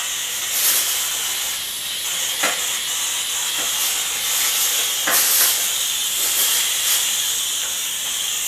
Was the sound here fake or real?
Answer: real